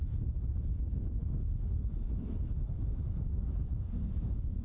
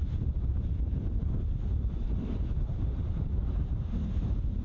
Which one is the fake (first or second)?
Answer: second